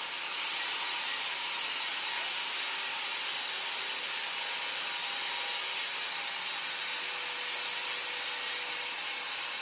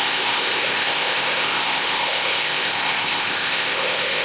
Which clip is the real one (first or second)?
first